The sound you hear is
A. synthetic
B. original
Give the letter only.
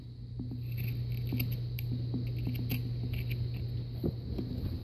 B